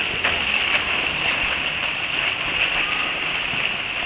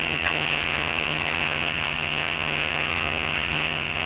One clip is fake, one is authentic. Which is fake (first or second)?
second